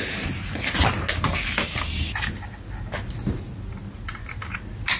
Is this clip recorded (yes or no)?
yes